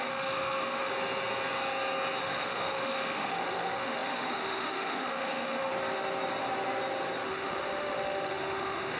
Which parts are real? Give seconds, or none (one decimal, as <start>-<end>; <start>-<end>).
0.9-2.2; 5.7-7.3